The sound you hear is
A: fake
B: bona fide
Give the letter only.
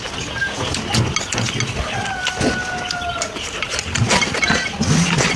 B